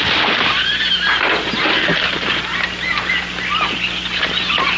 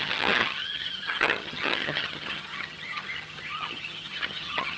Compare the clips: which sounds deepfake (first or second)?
second